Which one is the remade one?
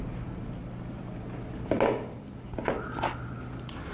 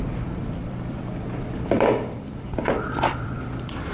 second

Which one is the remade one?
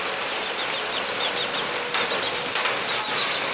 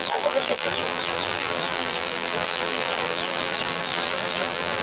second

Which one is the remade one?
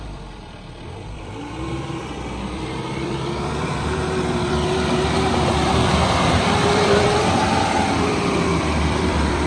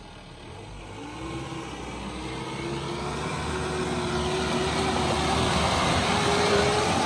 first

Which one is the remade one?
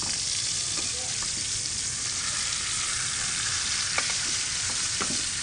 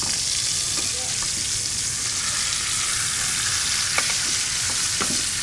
first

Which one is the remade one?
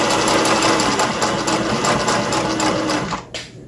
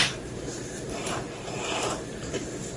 second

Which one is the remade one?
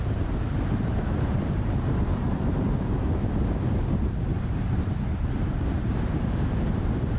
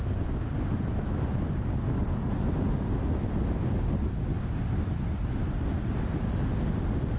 first